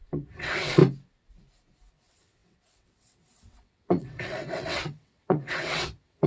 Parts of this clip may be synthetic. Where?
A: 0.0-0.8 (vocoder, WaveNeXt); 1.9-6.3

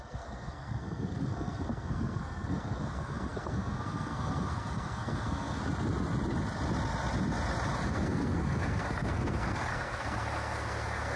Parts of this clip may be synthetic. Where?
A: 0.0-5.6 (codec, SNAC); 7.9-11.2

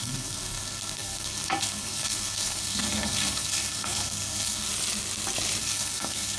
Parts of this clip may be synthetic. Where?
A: 0.0-4.7 (codec, SNAC); 5.6-6.4